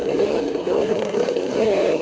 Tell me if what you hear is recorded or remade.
remade